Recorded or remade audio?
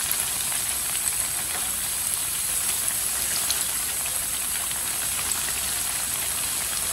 recorded